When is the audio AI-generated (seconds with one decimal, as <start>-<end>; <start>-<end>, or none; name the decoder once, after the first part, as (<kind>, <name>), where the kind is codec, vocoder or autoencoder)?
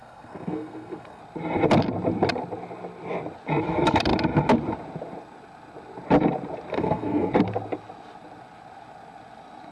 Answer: 0.0-1.2 (codec, SNAC); 6.7-7.3